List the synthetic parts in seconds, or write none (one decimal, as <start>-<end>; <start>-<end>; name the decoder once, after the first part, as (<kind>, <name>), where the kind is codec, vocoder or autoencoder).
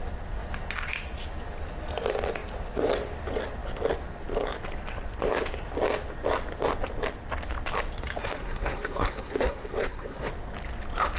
8.2-10.3 (codec, SNAC)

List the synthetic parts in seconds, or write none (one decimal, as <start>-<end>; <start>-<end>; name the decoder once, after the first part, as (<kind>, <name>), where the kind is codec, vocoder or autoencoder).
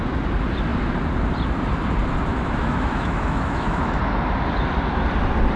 2.3-4.0 (autoencoder, DAC-VAE)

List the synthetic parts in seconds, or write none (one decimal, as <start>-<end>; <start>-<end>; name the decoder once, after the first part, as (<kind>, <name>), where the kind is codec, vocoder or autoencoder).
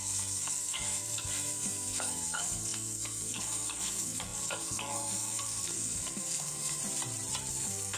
0.0-6.8 (codec, SNAC); 7.5-8.0